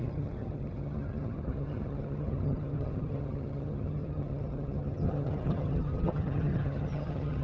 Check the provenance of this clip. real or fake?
fake